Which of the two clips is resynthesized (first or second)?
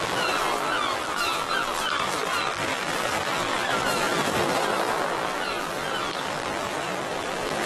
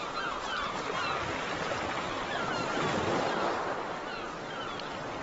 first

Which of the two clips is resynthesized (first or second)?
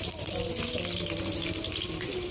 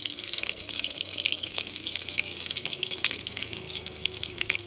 second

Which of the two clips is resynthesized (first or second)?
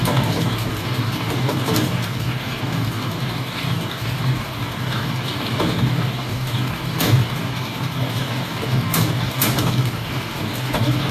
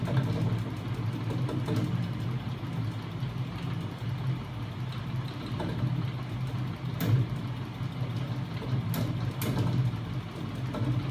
first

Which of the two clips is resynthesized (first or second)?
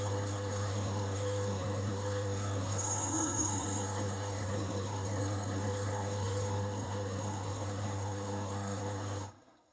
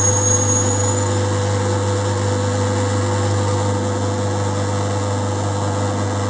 first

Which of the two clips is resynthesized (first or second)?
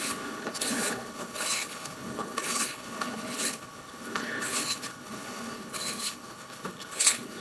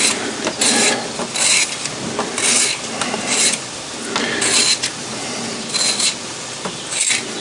first